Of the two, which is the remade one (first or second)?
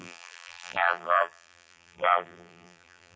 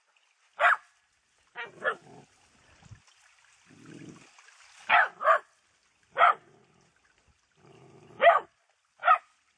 first